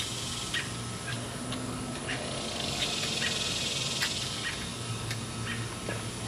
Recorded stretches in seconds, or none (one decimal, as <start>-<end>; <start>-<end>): 0.0-1.1; 2.9-4.7; 5.2-6.3